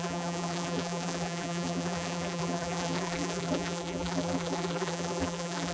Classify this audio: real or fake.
fake